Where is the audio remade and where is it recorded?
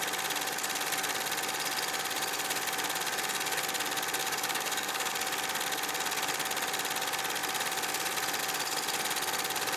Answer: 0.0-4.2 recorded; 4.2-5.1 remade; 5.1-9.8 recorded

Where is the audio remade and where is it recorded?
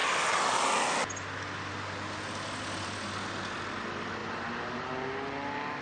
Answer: 0.0-5.8 recorded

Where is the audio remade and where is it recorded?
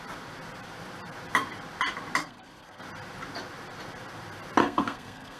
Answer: 0.0-2.2 recorded; 2.2-2.8 remade; 2.8-4.6 recorded; 4.6-5.4 remade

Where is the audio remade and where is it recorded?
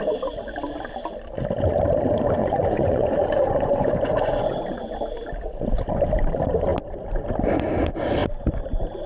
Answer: 0.0-2.4 recorded; 2.4-4.9 remade; 4.9-9.1 recorded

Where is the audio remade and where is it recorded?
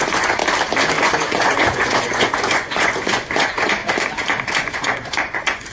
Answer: 0.0-0.4 remade; 0.4-1.0 recorded; 1.0-3.8 remade; 3.8-4.5 recorded; 4.5-5.7 remade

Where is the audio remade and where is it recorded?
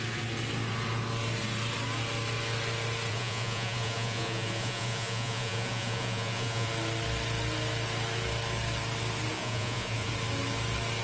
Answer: 0.0-3.1 recorded; 3.1-6.7 remade; 6.7-9.3 recorded; 9.3-10.1 remade; 10.1-11.0 recorded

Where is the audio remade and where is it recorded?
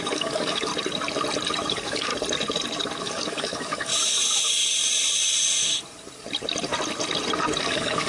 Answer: 0.0-0.7 remade; 0.7-1.7 recorded; 1.7-2.1 remade; 2.1-3.0 recorded; 3.0-3.9 remade; 3.9-7.6 recorded; 7.6-8.1 remade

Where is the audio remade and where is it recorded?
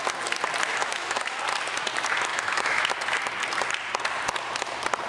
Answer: 0.0-0.8 recorded; 0.8-1.4 remade; 1.4-2.3 recorded; 2.3-2.9 remade; 2.9-5.1 recorded